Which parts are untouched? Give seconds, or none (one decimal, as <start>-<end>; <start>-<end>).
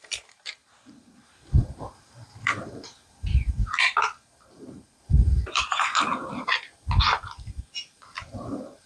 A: 6.2-7.9